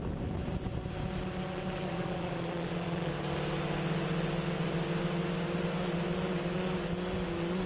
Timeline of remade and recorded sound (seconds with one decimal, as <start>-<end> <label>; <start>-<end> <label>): 0.0-1.9 recorded; 1.9-3.1 remade; 3.1-7.7 recorded